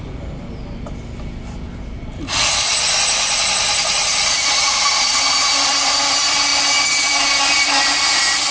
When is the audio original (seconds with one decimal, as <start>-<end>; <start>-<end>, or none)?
0.0-8.5